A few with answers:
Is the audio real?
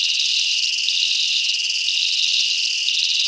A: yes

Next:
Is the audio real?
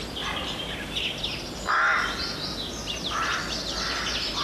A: yes